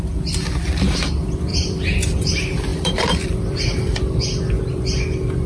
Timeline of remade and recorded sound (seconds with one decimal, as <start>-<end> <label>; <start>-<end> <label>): 0.0-1.5 recorded; 1.5-2.2 remade; 2.2-2.7 recorded; 2.7-4.8 remade; 4.8-5.5 recorded